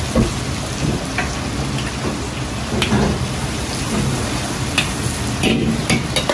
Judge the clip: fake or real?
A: real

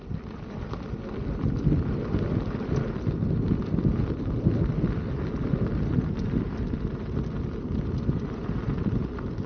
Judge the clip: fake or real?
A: real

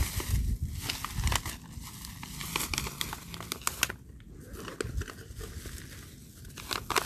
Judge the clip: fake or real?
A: real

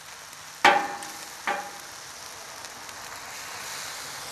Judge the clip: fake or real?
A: real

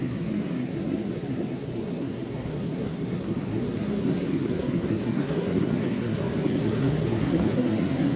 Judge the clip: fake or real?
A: fake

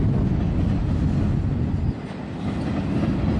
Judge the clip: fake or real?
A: real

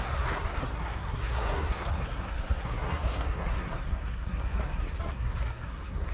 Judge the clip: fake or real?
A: fake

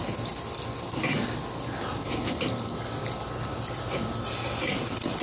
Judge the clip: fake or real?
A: real